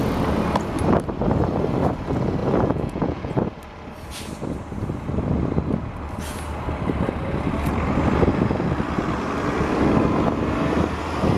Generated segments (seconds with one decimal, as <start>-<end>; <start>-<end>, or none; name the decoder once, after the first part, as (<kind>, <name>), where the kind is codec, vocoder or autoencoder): 2.4-3.3 (vocoder, Vocos)